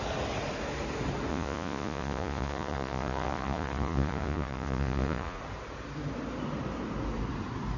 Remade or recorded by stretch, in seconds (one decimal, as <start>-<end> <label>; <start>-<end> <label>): 0.0-1.3 recorded; 1.3-5.4 remade; 5.4-7.8 recorded